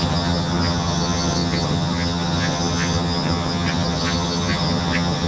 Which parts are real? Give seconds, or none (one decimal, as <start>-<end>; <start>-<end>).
none

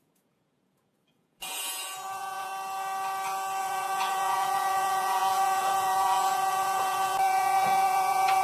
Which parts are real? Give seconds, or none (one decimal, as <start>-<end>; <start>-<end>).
2.5-3.6

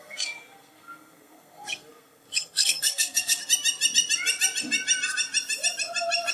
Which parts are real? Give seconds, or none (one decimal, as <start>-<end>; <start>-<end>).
3.4-6.3

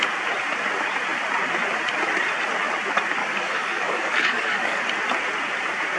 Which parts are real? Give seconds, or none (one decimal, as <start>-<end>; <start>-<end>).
0.0-3.2; 4.8-6.0

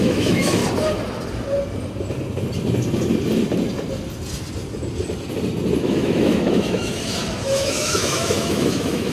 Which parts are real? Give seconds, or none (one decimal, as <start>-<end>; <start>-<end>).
0.6-5.8

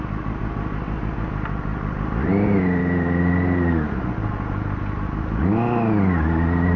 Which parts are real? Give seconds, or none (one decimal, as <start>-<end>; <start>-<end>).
0.0-6.8

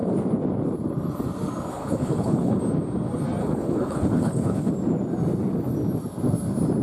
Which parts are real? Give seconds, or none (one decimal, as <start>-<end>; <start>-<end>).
0.0-1.7; 2.6-3.4; 4.7-6.8

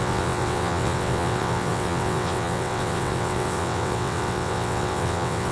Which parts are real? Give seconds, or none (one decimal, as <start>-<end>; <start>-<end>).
none